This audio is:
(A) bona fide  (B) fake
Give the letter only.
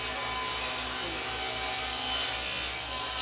A